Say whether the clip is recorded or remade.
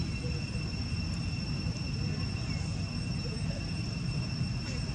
recorded